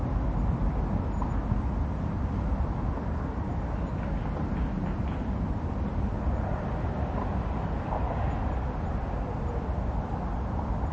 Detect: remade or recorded recorded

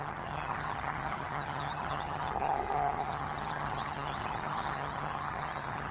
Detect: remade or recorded remade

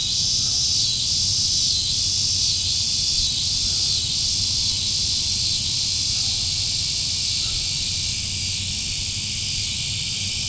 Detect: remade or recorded remade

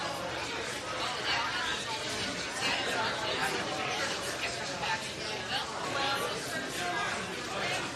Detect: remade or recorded recorded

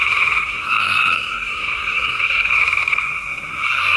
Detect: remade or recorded remade